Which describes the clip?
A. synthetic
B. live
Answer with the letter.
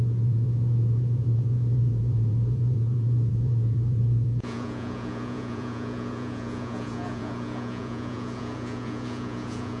A